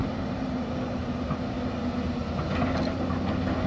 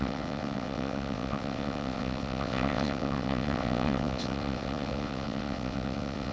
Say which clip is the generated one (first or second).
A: second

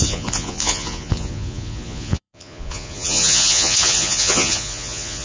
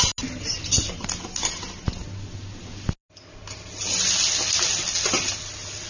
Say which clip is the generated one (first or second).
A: first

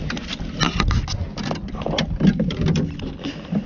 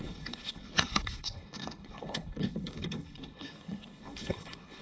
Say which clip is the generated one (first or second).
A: second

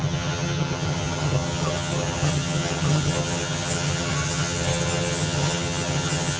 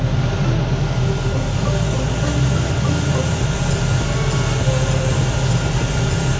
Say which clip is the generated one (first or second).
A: first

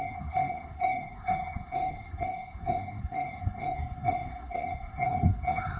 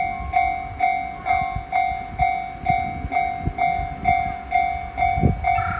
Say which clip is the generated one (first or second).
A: first